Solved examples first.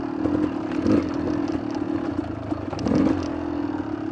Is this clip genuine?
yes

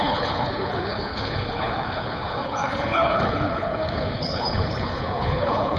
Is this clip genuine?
no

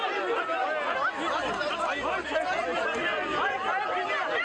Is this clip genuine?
yes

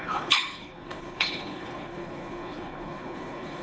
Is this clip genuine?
no